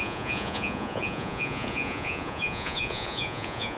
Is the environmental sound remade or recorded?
remade